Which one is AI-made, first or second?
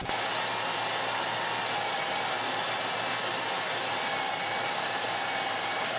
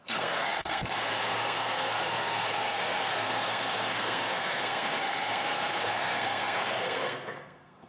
second